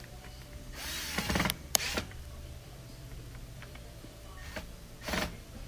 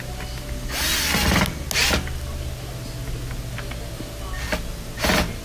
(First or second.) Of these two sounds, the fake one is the first